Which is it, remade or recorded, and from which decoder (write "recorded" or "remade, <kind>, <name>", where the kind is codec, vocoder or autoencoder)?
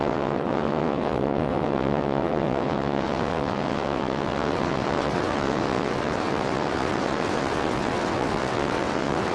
remade, vocoder, WaveNeXt